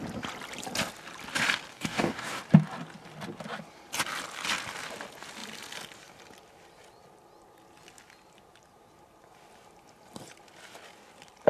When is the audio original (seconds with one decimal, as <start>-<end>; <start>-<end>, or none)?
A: 0.0-1.7; 2.4-11.5